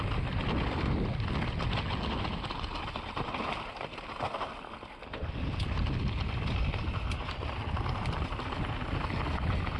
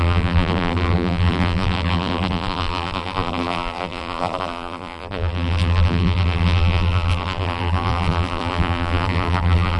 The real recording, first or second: first